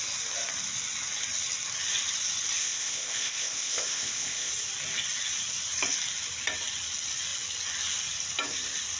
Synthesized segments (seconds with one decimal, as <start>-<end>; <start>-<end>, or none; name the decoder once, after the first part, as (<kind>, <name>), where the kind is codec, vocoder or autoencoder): 2.6-4.5 (codec, ZipCodec)